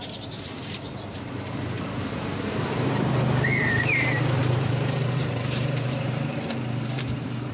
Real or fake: fake